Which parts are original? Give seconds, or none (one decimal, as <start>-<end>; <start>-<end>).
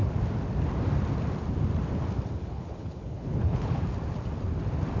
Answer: 0.0-2.4; 3.8-5.0